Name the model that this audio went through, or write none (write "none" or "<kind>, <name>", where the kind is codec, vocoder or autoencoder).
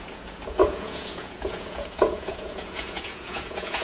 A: vocoder, Vocos